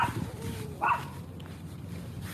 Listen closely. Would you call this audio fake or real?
real